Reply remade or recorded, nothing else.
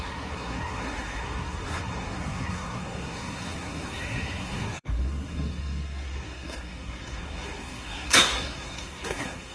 remade